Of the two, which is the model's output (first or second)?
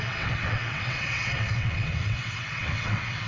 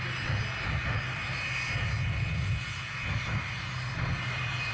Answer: first